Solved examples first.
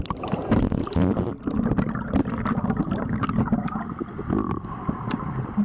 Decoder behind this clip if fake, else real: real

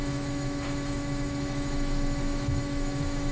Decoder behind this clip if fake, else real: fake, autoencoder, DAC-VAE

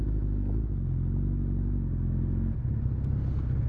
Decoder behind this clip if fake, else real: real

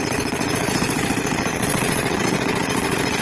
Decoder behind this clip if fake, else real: fake, vocoder, Vocos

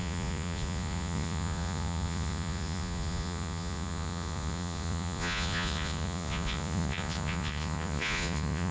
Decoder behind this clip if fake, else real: fake, vocoder, Vocos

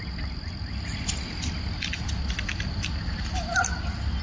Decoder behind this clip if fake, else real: real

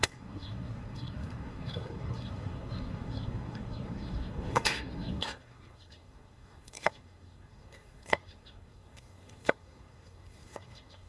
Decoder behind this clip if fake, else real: fake, codec, SNAC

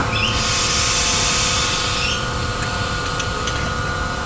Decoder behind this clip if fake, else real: real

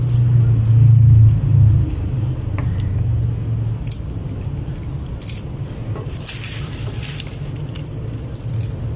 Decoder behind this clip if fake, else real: real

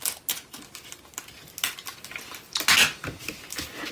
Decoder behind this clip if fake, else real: real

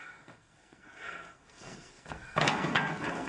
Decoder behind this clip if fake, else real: fake, codec, SNAC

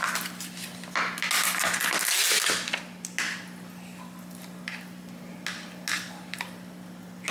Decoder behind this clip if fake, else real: real